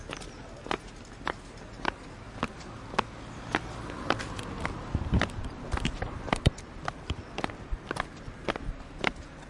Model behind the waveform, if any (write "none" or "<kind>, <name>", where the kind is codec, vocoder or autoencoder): none